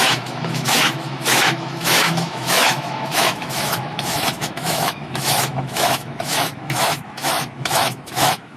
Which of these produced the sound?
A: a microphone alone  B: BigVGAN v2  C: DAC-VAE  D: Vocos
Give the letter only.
C